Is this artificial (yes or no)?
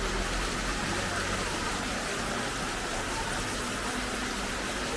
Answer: no